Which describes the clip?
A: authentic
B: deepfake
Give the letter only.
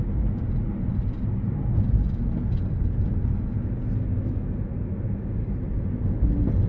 A